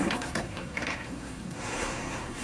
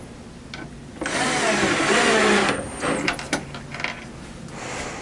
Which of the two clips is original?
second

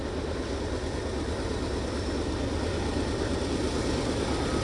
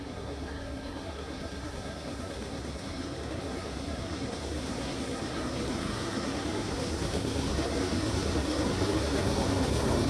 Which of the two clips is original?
first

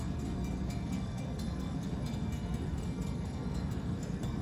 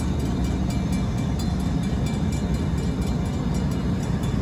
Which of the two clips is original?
second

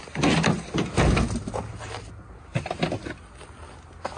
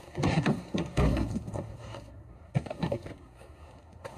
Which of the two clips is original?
first